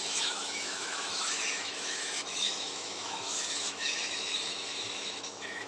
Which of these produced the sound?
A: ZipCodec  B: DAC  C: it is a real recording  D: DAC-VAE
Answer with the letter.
D